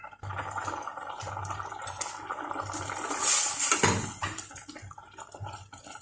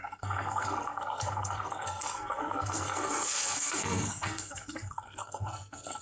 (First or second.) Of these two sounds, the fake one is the second